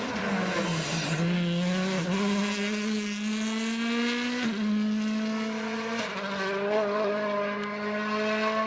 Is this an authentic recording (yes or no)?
yes